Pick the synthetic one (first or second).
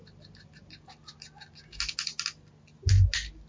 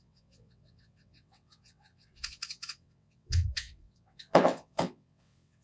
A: second